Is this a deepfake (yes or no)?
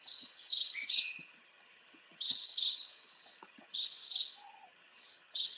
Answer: yes